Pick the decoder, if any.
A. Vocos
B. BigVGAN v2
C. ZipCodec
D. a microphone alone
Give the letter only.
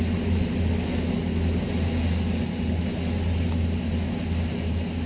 D